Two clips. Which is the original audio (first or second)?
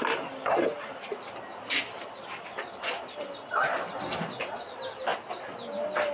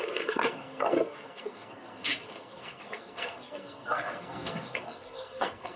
first